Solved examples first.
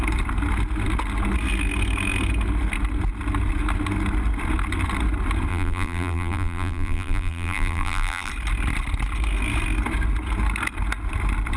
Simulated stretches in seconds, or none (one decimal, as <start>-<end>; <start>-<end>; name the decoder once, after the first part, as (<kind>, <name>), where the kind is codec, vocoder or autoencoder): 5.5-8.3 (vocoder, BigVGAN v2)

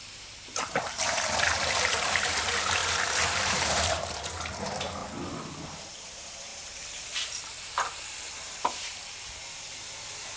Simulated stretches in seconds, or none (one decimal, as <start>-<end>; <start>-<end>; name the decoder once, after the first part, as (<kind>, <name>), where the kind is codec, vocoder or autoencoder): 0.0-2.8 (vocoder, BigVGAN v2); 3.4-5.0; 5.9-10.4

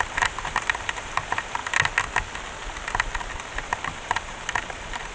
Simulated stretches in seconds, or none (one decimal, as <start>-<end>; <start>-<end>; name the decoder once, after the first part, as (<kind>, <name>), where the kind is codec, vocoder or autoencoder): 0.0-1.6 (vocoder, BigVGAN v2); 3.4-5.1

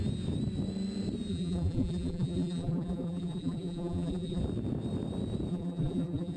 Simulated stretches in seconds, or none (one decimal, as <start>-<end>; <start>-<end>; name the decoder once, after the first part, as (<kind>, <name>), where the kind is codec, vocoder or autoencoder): 1.3-4.4 (vocoder, BigVGAN v2); 5.5-6.4

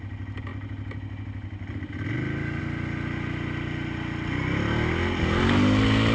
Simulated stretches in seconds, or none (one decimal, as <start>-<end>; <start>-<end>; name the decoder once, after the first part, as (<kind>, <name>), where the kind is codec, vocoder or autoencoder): none

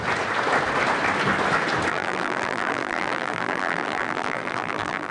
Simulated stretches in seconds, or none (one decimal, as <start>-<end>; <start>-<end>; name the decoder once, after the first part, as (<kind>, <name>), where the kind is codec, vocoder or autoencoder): 1.9-5.1 (vocoder, BigVGAN v2)